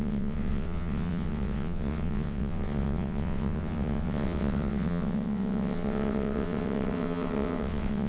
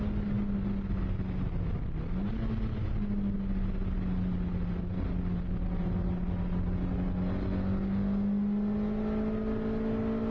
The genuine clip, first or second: second